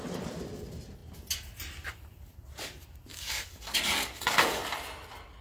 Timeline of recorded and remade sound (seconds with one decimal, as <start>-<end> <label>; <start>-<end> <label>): 0.0-3.1 recorded; 3.1-4.6 remade; 4.6-5.4 recorded

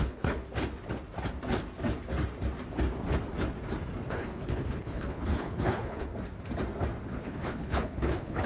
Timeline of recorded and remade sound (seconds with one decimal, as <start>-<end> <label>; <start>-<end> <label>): 0.0-0.4 remade; 0.4-4.1 recorded; 4.1-6.1 remade; 6.1-7.1 recorded; 7.1-8.5 remade

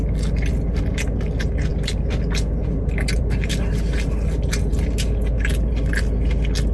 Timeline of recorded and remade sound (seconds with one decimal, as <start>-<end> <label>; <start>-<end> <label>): 0.0-6.7 recorded

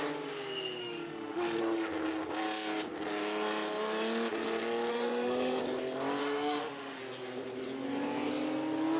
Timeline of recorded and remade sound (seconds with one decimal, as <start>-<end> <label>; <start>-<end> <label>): 0.0-0.8 recorded; 0.8-1.6 remade; 1.6-4.9 recorded; 4.9-5.6 remade; 5.6-6.2 recorded; 6.2-7.0 remade; 7.0-9.0 recorded

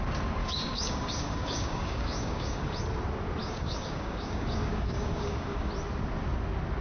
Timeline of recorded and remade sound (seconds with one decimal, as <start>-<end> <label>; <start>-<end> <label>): 0.0-0.4 recorded; 0.4-2.8 remade; 2.8-3.4 recorded; 3.4-5.7 remade; 5.7-6.8 recorded